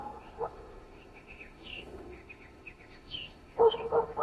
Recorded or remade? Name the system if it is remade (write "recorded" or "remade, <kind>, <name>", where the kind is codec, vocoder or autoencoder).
remade, autoencoder, DAC-VAE